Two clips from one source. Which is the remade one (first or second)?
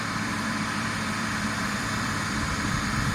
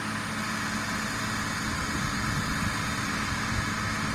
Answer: first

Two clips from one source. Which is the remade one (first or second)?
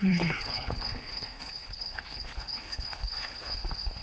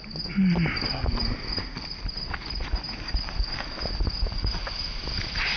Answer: first